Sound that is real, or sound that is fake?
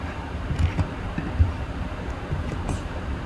fake